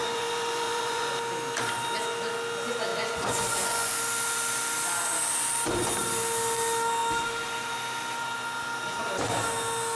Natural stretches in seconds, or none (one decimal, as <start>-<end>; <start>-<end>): 1.1-2.9; 4.0-10.0